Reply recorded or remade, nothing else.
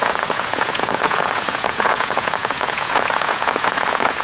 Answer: remade